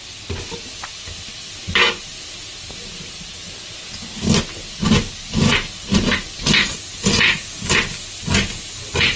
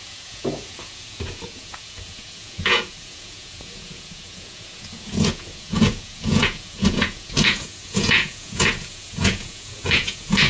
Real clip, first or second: first